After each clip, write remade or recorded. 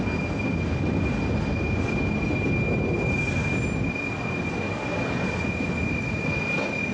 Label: recorded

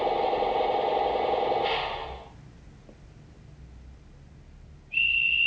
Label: recorded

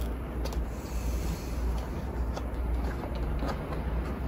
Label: recorded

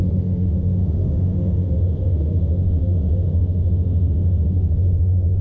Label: remade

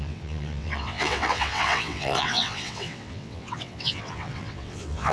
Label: remade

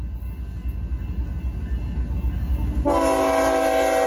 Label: recorded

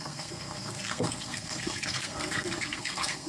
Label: remade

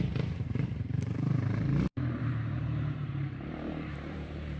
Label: remade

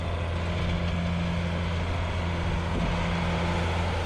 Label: recorded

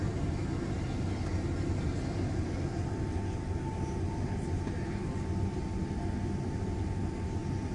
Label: recorded